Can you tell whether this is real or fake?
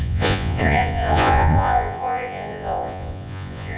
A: fake